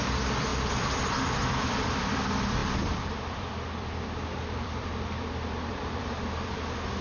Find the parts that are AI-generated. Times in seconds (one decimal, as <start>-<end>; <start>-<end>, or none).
0.0-7.0